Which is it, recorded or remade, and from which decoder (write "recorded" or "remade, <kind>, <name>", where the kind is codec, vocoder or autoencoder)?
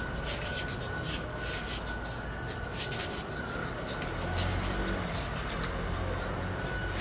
recorded